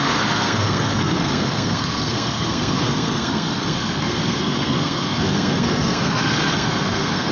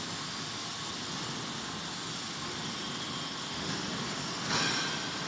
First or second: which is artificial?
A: first